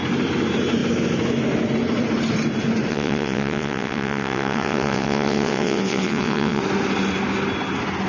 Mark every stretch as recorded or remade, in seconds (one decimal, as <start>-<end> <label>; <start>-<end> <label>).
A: 0.0-2.9 recorded; 2.9-6.6 remade; 6.6-8.1 recorded